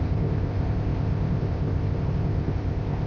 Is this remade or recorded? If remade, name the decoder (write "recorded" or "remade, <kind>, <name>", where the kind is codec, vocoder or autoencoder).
remade, codec, ZipCodec